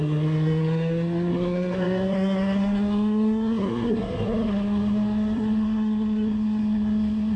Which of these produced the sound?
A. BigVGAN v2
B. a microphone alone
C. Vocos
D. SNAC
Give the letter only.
D